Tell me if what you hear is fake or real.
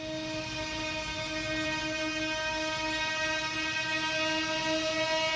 real